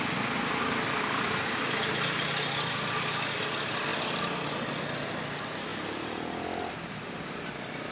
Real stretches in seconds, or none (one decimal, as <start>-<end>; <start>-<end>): 0.0-7.9